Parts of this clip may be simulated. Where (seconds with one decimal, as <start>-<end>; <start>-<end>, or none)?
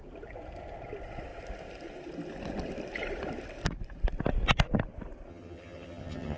5.3-6.4